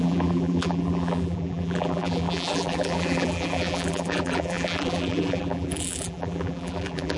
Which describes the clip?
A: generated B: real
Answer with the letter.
A